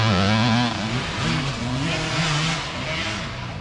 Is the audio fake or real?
real